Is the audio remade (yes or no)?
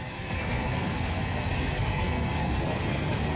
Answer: yes